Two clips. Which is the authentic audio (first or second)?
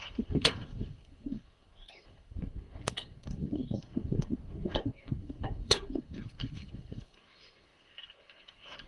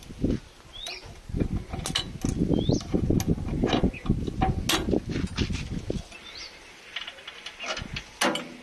second